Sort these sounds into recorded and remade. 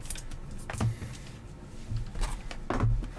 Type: recorded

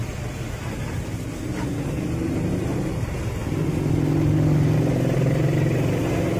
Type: recorded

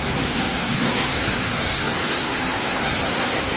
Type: remade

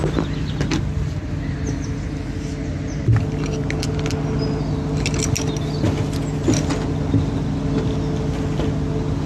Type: recorded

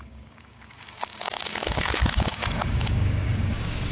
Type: remade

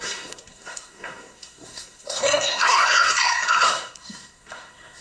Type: remade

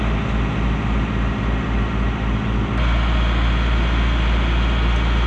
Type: recorded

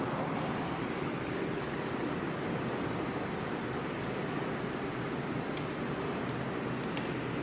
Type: recorded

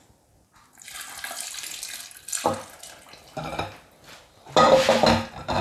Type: recorded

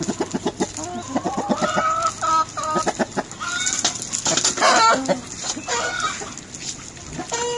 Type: recorded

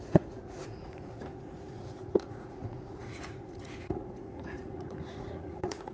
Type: remade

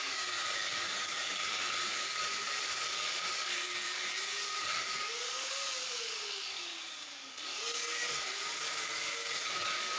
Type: remade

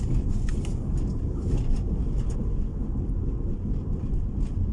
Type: recorded